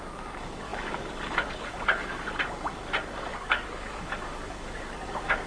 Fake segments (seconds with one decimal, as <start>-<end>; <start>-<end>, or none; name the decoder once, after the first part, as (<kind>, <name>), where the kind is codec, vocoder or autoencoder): 0.0-5.5 (codec, DAC)